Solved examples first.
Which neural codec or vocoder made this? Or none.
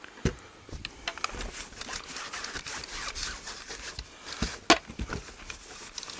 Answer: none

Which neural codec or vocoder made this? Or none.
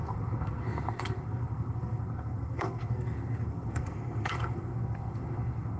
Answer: codec, SNAC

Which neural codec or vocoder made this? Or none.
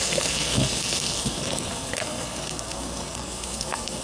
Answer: codec, SNAC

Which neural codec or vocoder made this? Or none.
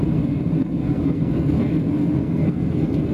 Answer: codec, SNAC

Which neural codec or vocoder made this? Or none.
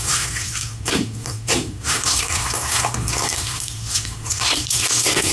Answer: codec, SNAC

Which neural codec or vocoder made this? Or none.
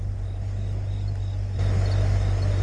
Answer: none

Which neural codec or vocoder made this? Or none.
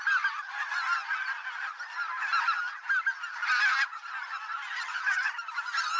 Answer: none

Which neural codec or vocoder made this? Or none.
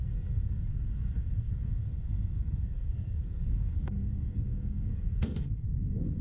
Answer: codec, SNAC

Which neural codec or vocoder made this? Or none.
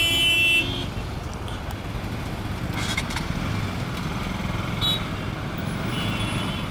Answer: none